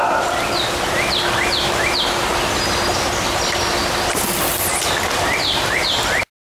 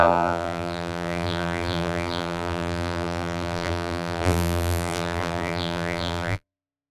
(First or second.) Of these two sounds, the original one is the first